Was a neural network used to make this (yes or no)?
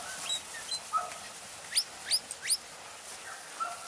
no